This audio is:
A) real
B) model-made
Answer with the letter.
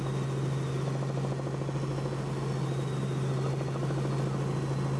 A